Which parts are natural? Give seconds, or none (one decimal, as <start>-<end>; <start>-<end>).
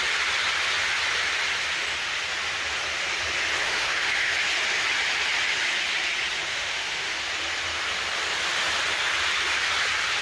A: 0.0-3.6; 4.3-6.5; 7.2-10.2